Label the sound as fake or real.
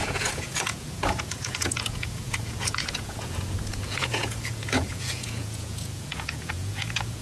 fake